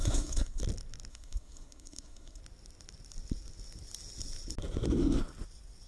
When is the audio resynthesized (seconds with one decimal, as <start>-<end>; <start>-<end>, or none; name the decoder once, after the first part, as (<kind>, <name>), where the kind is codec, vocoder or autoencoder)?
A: 0.0-0.6 (codec, SNAC); 1.1-2.4